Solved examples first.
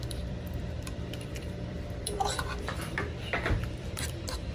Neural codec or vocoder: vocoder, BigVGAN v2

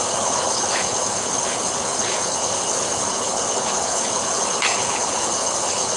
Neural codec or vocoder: codec, HILCodec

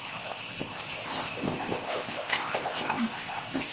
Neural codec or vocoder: codec, ZipCodec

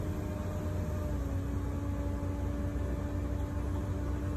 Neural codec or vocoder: none